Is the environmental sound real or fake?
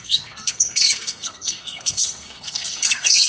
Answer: fake